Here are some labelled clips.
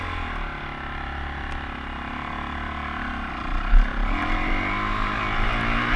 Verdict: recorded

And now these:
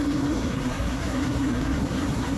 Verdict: remade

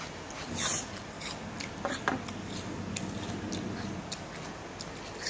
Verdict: recorded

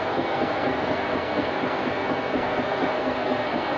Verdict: remade